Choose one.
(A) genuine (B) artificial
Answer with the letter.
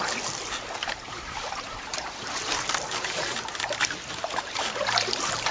B